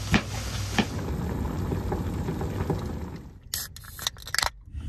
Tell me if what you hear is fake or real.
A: real